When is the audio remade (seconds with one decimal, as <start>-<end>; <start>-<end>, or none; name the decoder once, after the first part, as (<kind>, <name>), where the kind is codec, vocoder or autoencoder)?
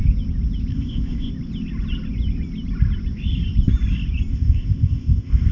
0.7-1.3 (codec, ZipCodec); 4.3-5.5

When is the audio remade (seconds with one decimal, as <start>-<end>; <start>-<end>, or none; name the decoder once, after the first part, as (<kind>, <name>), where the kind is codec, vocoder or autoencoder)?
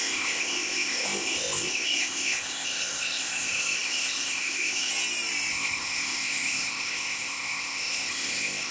0.0-4.9 (codec, ZipCodec); 5.5-8.7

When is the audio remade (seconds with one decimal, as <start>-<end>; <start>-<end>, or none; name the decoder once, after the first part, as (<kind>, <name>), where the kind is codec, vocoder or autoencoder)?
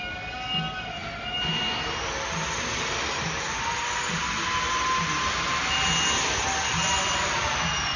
none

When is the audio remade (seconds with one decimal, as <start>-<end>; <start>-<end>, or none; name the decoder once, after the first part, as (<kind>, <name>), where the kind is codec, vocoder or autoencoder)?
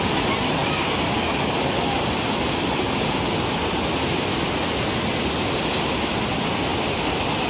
none